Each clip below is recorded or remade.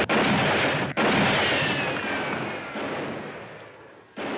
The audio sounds recorded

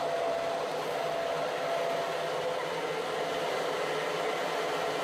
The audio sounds recorded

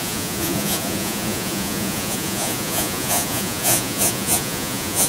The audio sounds remade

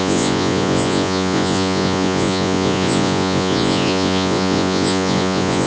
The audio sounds remade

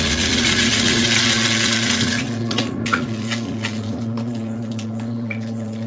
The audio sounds remade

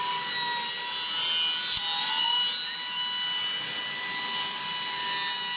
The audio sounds recorded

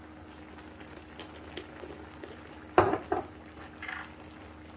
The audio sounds recorded